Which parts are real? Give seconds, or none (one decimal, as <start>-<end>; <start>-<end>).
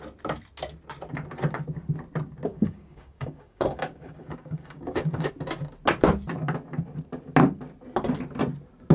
0.0-2.5; 5.3-8.9